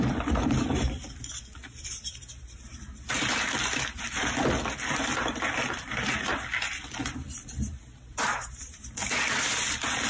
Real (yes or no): no